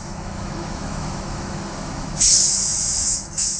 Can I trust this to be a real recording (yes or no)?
no